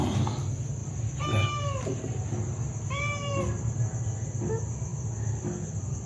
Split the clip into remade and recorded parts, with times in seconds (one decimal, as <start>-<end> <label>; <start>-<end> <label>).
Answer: 0.0-6.1 recorded